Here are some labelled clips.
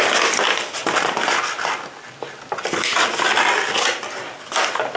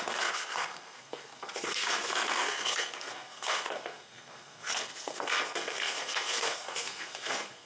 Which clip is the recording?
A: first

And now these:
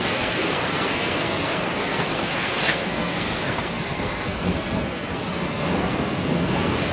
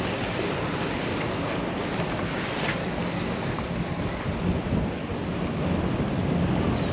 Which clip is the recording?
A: second